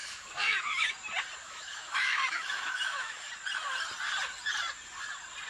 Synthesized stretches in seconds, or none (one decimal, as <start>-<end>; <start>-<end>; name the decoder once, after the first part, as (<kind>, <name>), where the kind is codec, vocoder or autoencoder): 0.0-0.9 (autoencoder, DAC-VAE); 1.4-3.3

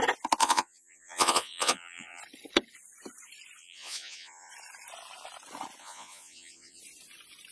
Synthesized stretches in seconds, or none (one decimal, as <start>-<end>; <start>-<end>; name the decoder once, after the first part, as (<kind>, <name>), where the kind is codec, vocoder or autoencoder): 0.4-2.2 (vocoder, Vocos); 3.6-4.5; 5.8-6.8

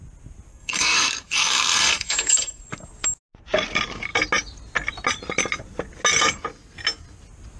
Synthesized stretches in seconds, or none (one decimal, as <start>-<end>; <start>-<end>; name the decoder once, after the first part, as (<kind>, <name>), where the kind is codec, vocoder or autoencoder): 0.5-2.6 (codec, SNAC)